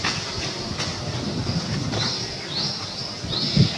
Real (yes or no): yes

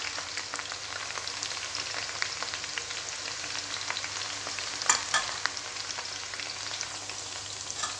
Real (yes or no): yes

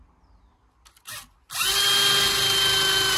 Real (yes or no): yes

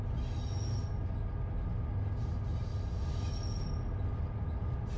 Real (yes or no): yes